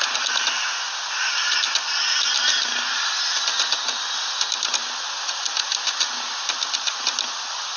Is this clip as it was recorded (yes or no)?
yes